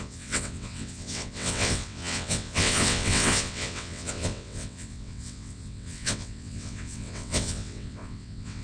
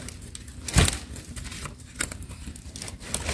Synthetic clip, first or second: first